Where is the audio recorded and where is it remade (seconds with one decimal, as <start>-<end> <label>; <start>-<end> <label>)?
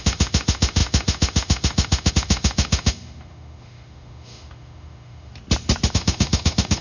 0.0-5.3 remade; 5.3-5.9 recorded; 5.9-6.8 remade